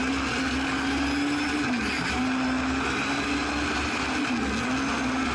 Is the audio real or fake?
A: real